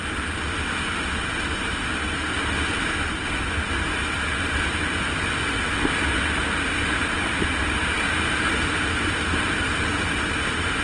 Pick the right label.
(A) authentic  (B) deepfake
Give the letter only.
A